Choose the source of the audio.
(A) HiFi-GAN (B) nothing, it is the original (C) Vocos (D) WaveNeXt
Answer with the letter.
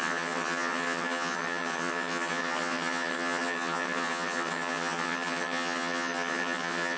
A